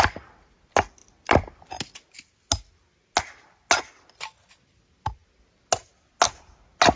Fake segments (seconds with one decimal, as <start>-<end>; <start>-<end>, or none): none